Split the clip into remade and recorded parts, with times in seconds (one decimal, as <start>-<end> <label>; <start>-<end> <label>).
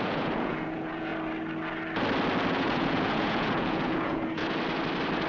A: 0.0-1.1 remade; 1.1-2.5 recorded; 2.5-4.4 remade; 4.4-5.3 recorded